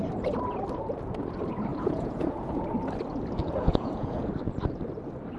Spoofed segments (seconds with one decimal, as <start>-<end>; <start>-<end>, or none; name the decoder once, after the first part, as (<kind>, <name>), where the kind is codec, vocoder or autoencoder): 1.7-2.6 (vocoder, Vocos); 3.4-4.3